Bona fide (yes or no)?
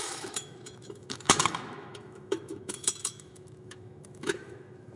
no